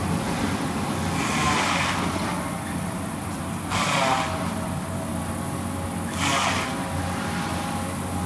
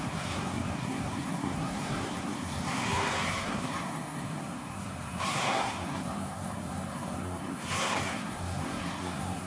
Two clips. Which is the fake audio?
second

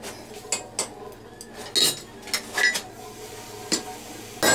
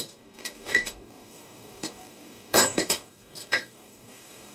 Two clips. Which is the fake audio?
second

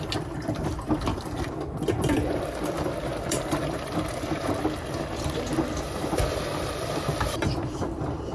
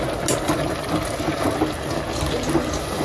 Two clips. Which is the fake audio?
first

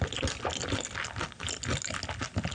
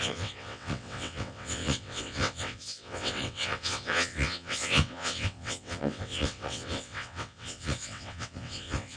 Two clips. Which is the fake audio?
second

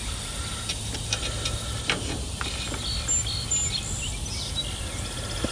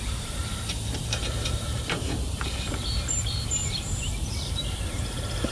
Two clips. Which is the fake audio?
second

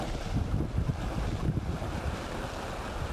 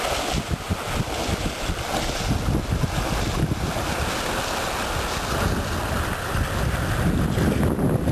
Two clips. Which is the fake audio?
first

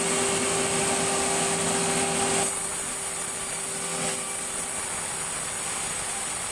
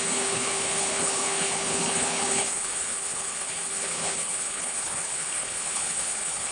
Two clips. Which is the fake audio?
second